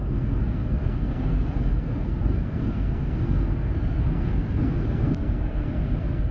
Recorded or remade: remade